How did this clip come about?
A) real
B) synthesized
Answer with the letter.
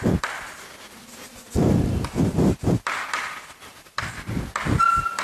A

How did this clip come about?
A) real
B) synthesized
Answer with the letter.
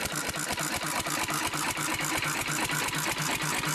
A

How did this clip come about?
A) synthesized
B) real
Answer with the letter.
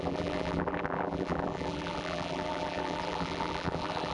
A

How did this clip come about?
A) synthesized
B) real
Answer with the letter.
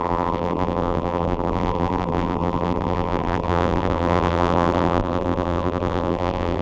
A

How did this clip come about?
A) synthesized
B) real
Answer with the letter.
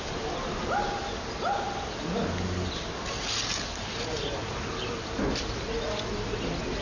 B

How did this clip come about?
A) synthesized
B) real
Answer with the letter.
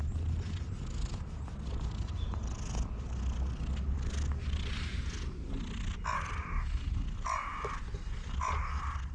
B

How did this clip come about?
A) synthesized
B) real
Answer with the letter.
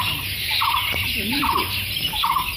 A